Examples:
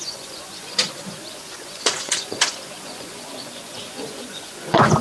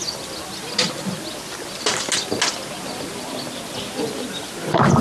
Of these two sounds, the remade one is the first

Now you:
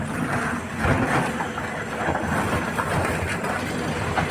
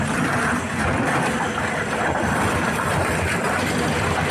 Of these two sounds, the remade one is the second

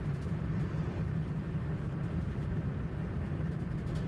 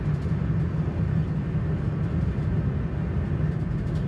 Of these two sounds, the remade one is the first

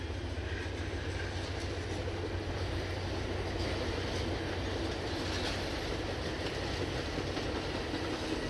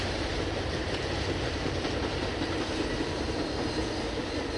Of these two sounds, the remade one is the second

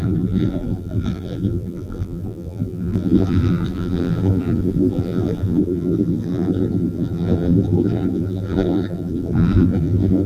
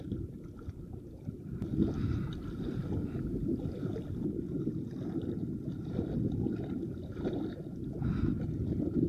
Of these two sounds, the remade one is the first